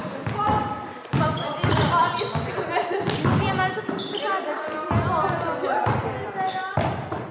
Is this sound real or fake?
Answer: real